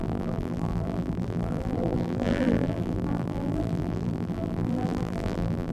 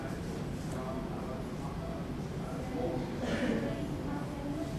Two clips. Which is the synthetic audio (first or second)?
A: first